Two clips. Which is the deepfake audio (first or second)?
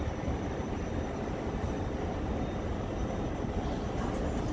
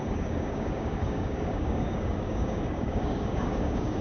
second